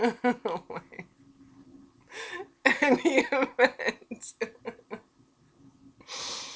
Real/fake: real